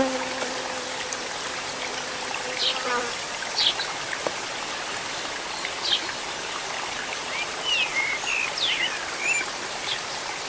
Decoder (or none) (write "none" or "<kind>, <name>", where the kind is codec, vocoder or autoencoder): none